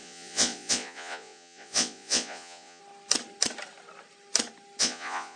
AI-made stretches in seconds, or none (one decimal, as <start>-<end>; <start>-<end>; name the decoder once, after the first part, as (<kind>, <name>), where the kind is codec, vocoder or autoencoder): 0.0-2.8 (vocoder, Vocos); 4.8-5.4